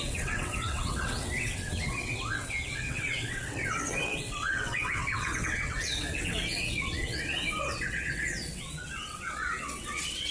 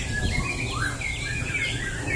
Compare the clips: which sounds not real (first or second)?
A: first